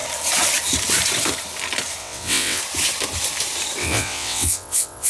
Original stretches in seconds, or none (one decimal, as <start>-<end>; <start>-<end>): 0.0-2.0; 2.6-3.8

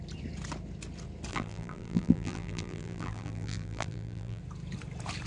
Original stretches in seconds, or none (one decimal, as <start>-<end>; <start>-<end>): 0.0-1.3; 4.4-5.3

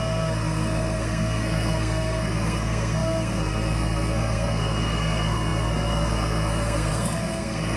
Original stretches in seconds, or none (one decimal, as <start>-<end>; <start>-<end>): none

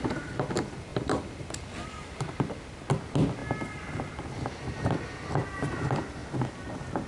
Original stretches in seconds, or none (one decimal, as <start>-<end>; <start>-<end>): 0.0-0.9; 1.9-7.1

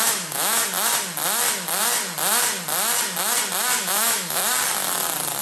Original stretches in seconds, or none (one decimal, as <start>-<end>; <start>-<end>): 0.6-3.8; 4.4-5.4

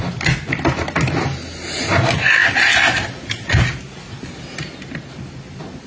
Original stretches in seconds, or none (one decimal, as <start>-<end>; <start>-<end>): 0.0-5.9

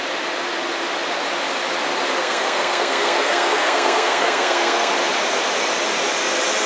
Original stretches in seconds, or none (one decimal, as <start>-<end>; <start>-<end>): 0.0-2.2; 4.9-6.7

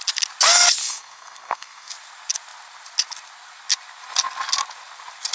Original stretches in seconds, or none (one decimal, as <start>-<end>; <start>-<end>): 0.0-0.8; 1.9-5.3